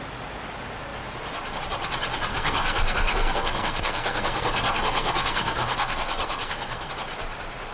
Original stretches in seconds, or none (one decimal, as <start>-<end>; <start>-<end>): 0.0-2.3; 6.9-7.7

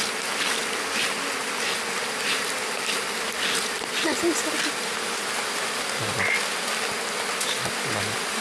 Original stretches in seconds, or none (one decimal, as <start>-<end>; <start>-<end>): 0.0-8.4

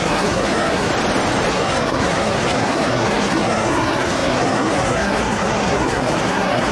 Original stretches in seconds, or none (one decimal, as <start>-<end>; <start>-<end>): 0.9-1.5

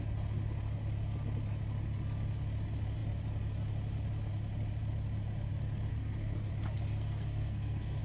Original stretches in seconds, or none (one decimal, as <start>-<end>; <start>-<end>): 0.0-5.9; 6.5-6.9

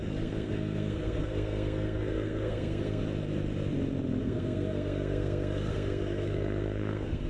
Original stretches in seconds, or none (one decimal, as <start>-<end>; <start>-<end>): 3.0-4.2